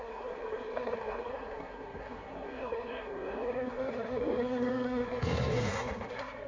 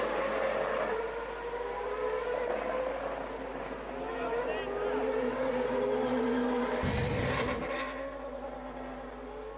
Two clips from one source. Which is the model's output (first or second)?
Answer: first